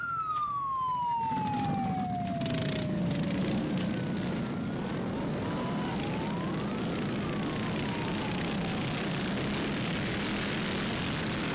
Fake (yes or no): no